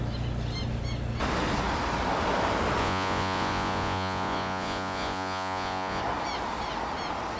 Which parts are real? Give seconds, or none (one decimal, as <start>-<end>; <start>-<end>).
0.0-2.8; 6.0-7.4